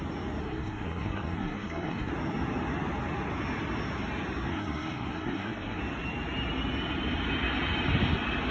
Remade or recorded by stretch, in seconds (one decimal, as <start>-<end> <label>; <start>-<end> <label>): 0.0-0.4 recorded; 0.4-2.1 remade; 2.1-4.5 recorded; 4.5-5.8 remade; 5.8-8.5 recorded